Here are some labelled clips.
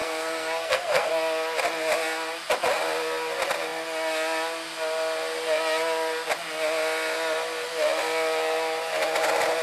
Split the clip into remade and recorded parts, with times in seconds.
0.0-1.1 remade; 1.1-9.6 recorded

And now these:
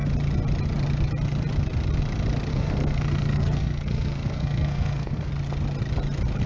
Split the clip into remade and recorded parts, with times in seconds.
0.0-2.5 recorded; 2.5-5.3 remade; 5.3-6.5 recorded

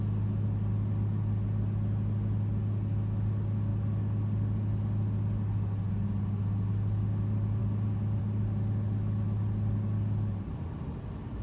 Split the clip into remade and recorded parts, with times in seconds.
0.0-11.4 recorded

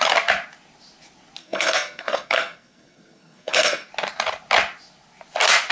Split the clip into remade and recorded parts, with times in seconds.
0.0-1.4 recorded; 1.4-3.9 remade; 3.9-5.7 recorded

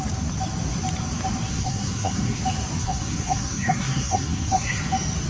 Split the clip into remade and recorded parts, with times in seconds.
0.0-1.5 recorded; 1.5-2.4 remade; 2.4-2.8 recorded; 2.8-4.8 remade; 4.8-5.3 recorded

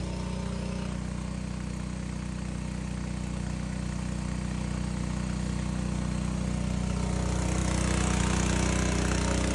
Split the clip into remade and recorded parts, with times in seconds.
0.0-9.5 recorded